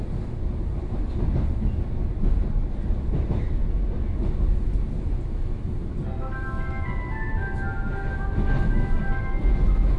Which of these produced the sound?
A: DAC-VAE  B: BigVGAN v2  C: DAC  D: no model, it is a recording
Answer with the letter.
D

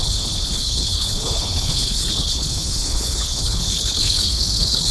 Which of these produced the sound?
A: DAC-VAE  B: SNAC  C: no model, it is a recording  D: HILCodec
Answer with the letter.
D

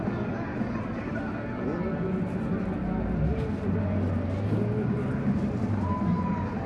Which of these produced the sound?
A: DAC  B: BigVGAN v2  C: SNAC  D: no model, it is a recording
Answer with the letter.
D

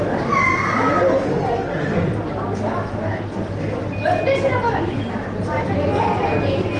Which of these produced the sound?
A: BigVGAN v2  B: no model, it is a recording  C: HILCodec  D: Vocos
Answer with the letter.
B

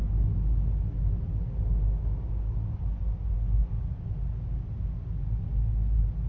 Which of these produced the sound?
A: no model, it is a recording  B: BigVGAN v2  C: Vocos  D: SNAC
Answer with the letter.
A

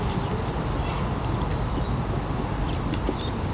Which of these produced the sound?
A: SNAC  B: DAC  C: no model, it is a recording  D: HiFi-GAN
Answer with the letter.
C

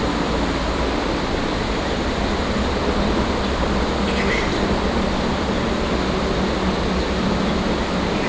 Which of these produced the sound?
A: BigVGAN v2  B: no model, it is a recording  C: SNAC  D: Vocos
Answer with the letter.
A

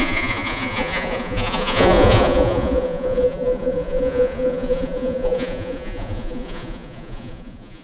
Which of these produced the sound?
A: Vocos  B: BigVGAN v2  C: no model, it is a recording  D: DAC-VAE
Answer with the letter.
A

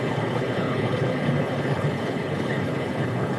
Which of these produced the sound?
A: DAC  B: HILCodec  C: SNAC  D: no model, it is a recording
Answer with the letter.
B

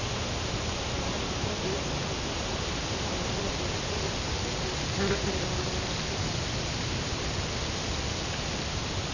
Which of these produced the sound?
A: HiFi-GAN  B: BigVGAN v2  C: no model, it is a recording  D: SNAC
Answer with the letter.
C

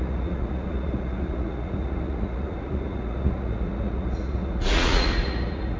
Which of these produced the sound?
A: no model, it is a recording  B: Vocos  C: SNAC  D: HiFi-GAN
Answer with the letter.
B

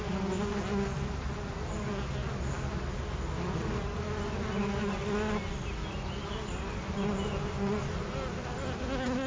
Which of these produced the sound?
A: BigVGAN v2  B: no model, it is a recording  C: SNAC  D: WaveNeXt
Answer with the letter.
B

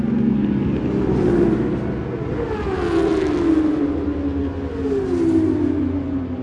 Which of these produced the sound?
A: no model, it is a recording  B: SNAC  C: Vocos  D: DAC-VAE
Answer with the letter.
A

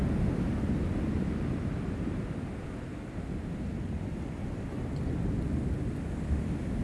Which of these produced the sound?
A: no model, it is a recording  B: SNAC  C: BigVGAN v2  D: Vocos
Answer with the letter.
A